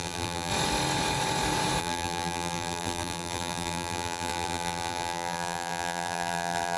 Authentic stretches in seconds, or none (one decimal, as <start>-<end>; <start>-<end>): 0.5-1.8